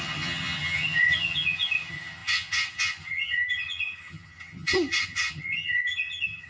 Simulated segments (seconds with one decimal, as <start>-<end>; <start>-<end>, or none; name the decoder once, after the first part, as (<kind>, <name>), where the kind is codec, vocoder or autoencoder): 0.0-6.5 (vocoder, HiFi-GAN)

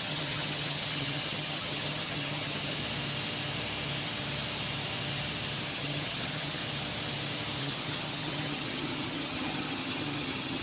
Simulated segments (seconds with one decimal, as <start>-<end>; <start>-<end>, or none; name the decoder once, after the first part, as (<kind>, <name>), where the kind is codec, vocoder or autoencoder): 0.0-2.8 (vocoder, HiFi-GAN); 5.7-6.6; 7.6-10.6

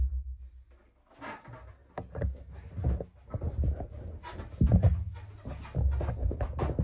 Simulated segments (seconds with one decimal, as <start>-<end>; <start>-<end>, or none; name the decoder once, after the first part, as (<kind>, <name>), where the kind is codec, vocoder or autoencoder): none

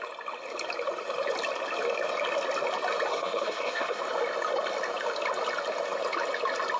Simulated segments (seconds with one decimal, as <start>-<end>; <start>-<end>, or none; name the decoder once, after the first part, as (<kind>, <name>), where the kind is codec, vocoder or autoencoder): 3.1-4.0 (codec, SNAC)

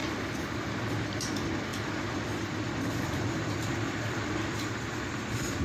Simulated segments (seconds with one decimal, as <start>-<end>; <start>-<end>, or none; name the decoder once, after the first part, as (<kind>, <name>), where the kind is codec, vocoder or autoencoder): none

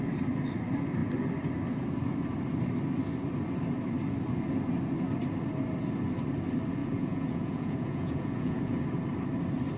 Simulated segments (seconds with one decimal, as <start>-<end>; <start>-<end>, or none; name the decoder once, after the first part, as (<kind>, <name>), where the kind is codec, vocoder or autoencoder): 6.8-8.8 (vocoder, Vocos)